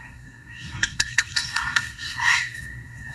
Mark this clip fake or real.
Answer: fake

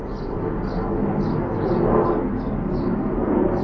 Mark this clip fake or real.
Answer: real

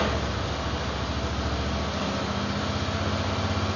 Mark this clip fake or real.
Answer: real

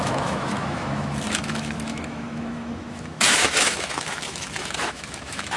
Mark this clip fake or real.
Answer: fake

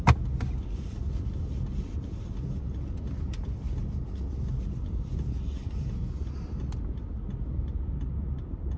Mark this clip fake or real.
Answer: real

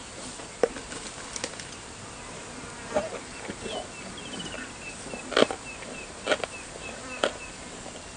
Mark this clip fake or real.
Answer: real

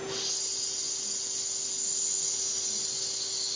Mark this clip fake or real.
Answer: real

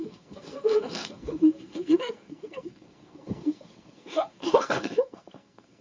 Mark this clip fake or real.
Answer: fake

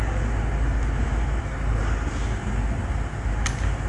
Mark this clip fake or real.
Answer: real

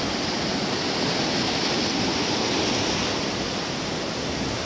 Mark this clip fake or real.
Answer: real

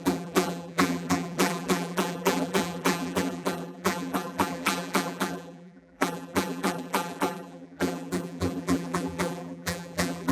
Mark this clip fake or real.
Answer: fake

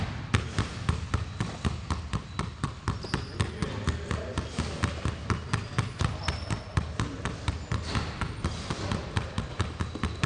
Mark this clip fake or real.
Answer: real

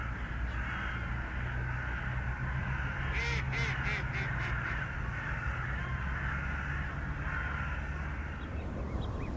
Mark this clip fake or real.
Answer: real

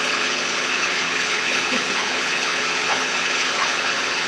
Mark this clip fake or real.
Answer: fake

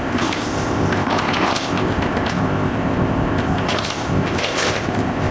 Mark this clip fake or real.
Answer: fake